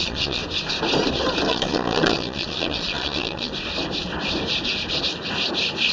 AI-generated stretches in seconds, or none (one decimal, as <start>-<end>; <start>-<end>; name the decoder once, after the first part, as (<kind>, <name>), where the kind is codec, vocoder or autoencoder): 0.0-0.4 (vocoder, Vocos); 1.5-3.5